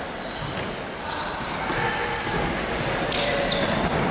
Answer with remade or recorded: recorded